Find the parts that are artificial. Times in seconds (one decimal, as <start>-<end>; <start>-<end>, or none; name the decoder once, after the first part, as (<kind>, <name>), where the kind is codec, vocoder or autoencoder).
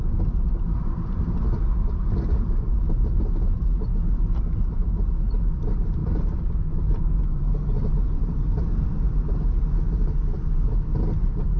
2.7-3.3 (vocoder, BigVGAN v2); 6.0-10.7